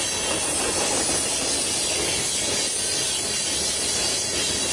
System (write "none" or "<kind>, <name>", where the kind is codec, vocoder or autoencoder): none